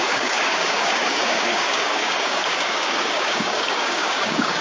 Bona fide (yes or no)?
no